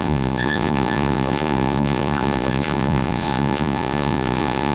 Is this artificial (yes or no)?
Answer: yes